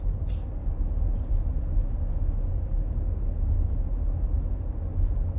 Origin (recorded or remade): recorded